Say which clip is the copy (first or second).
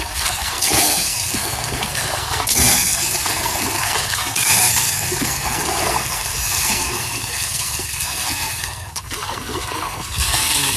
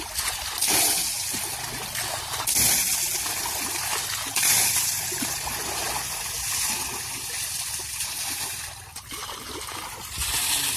first